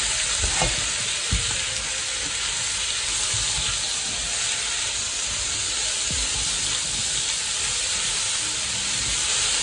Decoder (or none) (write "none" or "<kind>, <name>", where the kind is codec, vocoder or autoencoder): none